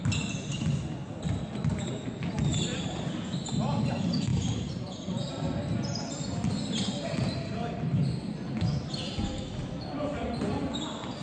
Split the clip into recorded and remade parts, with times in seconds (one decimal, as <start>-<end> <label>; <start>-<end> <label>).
0.0-4.3 recorded; 4.3-5.3 remade; 5.3-11.2 recorded